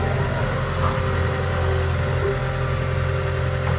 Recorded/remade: recorded